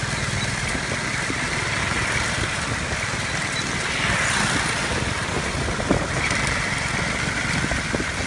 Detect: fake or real real